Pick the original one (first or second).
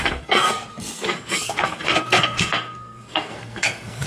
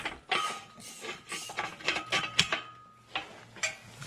second